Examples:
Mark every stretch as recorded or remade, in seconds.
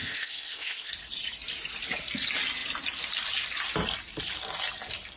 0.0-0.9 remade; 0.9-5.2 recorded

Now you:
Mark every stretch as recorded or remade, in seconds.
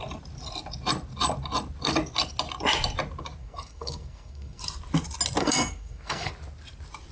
0.0-3.4 recorded; 3.4-4.6 remade; 4.6-5.4 recorded; 5.4-6.3 remade; 6.3-7.1 recorded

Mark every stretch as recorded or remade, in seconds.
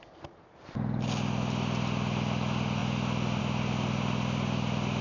0.0-2.8 remade; 2.8-3.4 recorded; 3.4-5.0 remade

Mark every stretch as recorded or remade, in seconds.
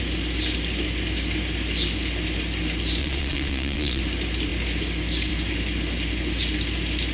0.0-3.0 recorded; 3.0-4.0 remade; 4.0-7.1 recorded